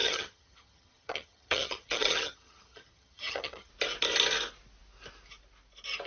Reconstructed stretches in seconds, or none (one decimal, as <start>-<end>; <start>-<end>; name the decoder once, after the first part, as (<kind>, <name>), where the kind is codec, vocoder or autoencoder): 0.0-3.7 (vocoder, HiFi-GAN)